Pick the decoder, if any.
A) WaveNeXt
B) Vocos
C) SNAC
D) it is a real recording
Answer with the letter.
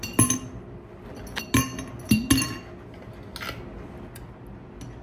D